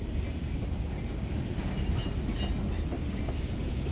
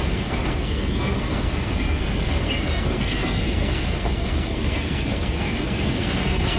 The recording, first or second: first